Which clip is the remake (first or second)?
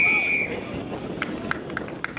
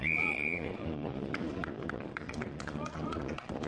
second